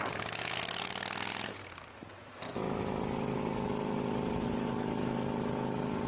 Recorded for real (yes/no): yes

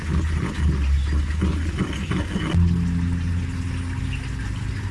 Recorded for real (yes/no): yes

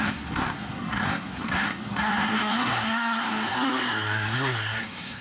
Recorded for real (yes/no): no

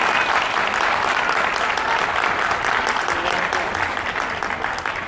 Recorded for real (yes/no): yes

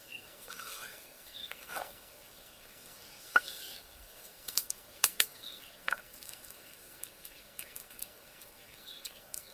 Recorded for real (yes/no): no